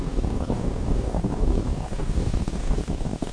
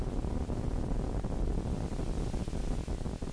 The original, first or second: second